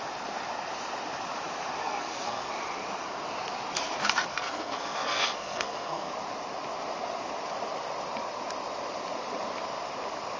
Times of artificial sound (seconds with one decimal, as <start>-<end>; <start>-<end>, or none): 1.8-2.5; 4.3-6.1